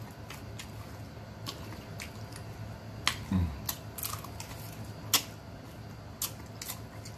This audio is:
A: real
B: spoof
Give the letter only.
A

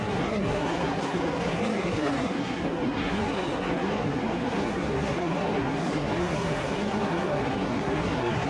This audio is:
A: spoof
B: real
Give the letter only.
A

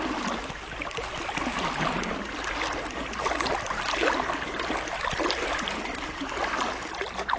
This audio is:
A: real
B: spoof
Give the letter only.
A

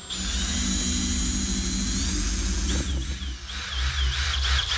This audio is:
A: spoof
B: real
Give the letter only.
B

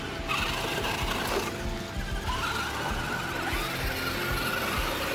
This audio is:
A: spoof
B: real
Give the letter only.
B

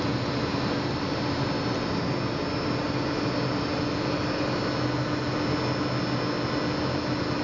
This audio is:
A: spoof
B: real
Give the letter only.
B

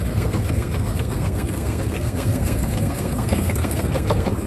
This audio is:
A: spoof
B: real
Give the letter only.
A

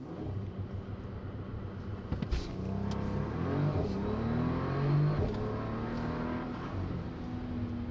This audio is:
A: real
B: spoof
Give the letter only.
A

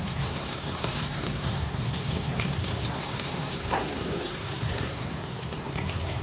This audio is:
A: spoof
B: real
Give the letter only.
A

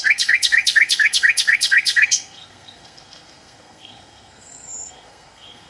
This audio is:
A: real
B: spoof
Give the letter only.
B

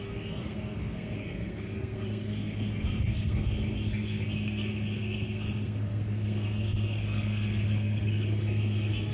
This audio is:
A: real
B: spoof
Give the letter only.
B